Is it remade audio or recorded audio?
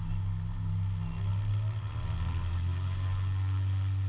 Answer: recorded